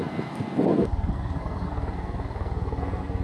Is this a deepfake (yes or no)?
yes